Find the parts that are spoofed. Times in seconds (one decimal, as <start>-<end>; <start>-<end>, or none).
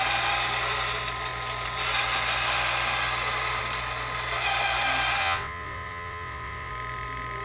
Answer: 5.2-6.7